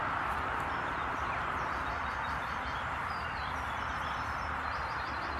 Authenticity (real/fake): fake